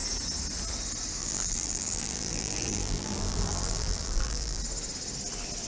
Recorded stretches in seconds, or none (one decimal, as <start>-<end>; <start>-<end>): 0.0-1.2; 4.6-5.7